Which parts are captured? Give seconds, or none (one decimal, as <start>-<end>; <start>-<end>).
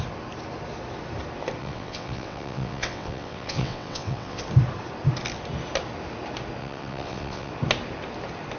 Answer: 0.0-1.6; 4.4-6.6; 7.5-8.6